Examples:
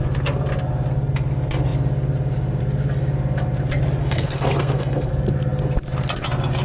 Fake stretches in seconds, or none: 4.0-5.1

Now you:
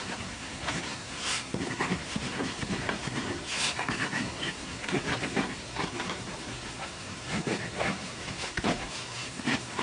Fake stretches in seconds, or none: 0.0-9.8

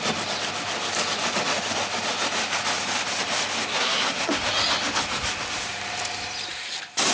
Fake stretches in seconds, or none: 3.7-4.3

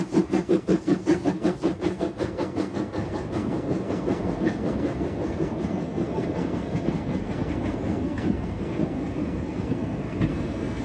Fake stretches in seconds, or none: 0.0-10.8

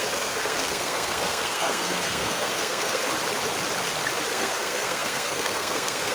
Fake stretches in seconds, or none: 0.0-3.0; 4.3-6.1

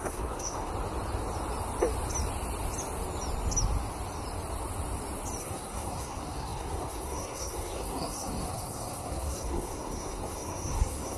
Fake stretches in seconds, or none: 0.0-0.7; 5.4-11.2

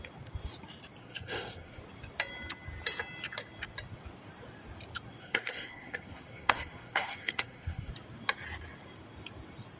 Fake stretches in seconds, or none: 1.0-1.8; 5.2-7.9

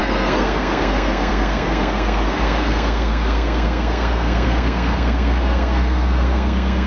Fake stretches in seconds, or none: 0.0-6.9